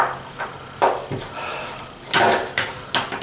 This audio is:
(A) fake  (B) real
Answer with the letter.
B